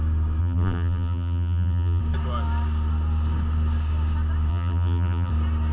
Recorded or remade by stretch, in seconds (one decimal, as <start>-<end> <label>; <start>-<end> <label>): 0.0-0.4 recorded; 0.4-2.0 remade; 2.0-4.5 recorded; 4.5-5.3 remade; 5.3-5.7 recorded